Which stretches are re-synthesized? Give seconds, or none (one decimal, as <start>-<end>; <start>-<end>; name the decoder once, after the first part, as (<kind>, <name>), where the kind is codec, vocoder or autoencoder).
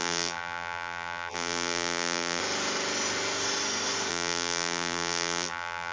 0.0-2.4 (vocoder, BigVGAN v2); 4.1-5.9